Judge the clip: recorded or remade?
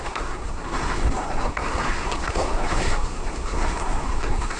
remade